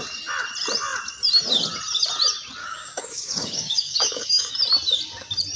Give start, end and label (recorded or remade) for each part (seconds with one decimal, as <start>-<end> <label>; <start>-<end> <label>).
0.0-2.6 recorded; 2.6-4.5 remade; 4.5-5.6 recorded